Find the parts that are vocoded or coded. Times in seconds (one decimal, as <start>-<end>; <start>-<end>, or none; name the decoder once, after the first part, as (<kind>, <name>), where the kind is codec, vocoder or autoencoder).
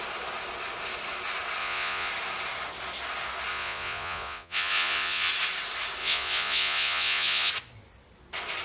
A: 1.6-2.1 (vocoder, Vocos); 3.5-5.3; 6.0-7.5